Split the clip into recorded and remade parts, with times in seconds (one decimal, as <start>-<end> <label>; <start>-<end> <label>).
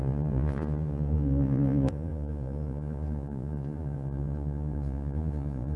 0.0-5.8 remade